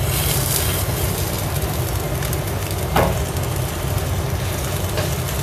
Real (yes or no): yes